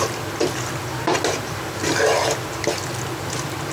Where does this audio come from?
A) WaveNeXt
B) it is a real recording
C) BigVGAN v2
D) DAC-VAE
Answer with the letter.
B